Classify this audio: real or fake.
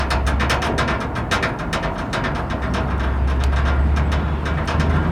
real